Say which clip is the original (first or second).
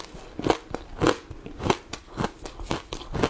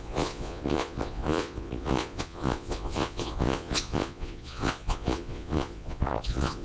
first